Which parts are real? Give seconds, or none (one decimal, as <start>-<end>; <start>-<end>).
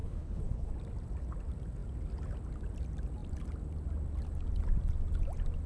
0.7-5.7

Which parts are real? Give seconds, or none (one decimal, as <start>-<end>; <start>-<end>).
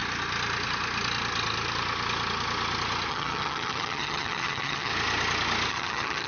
0.0-3.1; 4.9-5.7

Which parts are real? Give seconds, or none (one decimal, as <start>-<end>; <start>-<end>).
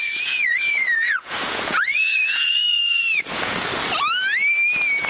3.7-5.1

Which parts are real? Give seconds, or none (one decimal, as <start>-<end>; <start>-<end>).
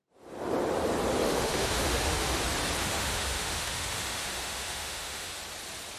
0.0-1.2; 2.4-2.8; 5.4-6.0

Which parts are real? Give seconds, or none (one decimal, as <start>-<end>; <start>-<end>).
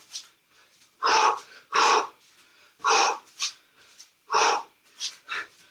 0.0-0.7; 2.0-2.5; 4.5-5.7